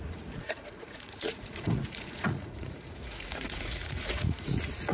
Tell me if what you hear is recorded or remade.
remade